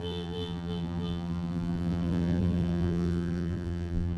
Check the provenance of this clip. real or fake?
fake